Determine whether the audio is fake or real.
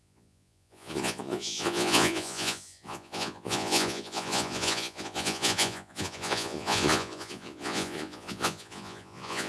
fake